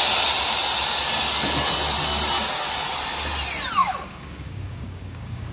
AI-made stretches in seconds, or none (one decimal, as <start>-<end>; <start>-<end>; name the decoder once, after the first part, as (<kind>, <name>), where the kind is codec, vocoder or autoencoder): 3.8-5.5 (codec, DAC)